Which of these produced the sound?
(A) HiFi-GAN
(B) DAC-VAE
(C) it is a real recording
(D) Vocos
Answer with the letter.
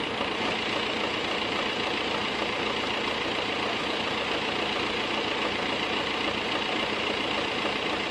C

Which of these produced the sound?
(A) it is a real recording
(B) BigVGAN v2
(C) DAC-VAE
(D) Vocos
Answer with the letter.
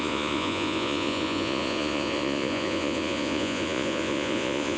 D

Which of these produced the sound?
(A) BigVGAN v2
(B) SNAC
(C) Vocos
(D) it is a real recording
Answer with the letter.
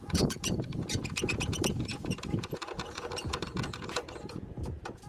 C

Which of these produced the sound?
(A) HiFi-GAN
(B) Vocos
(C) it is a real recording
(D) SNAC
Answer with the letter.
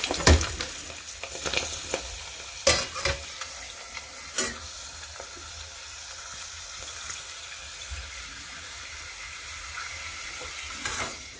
C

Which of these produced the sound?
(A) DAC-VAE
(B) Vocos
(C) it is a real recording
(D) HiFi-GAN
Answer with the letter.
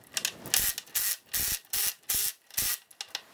C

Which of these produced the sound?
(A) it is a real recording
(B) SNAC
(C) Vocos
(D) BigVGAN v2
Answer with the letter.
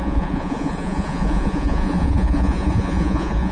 C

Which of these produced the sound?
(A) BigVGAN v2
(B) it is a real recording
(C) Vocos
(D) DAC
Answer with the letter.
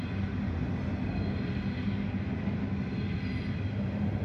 B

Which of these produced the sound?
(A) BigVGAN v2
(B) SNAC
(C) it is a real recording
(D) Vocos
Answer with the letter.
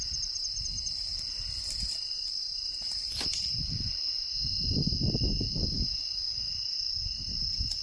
C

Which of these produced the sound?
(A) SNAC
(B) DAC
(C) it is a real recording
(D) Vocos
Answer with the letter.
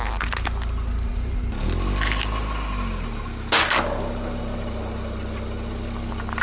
C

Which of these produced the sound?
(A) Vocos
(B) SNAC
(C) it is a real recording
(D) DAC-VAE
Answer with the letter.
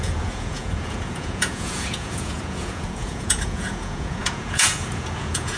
A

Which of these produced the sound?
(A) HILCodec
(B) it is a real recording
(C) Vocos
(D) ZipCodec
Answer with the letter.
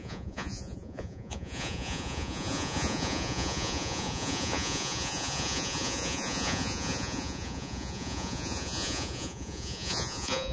C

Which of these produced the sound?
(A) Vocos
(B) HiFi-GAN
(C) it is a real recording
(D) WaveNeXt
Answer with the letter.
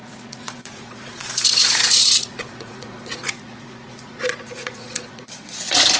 A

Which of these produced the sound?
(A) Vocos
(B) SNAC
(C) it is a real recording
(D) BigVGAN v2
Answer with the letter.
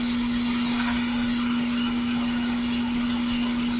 C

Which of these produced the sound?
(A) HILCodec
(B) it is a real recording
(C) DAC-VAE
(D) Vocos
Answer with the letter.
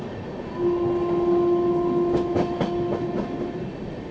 B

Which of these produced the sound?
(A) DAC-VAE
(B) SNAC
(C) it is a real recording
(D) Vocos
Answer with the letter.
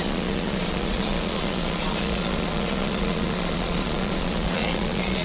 D